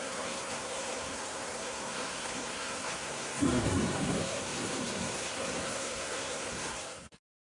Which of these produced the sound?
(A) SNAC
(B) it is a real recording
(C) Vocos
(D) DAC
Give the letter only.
A